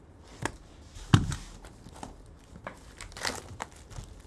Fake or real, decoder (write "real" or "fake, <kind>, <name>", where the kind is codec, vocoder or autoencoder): real